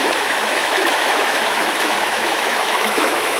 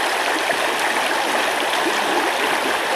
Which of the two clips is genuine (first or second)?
second